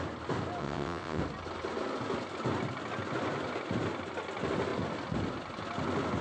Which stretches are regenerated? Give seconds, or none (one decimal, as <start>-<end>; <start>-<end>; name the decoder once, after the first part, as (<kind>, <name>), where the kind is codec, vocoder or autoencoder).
0.6-1.2 (vocoder, WaveNeXt)